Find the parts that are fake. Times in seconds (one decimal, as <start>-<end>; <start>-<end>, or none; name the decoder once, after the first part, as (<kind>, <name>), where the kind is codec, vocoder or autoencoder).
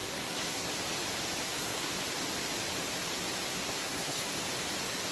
0.0-0.7 (codec, SNAC); 1.4-1.9; 3.5-4.3